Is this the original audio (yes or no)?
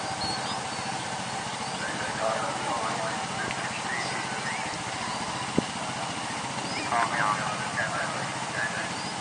yes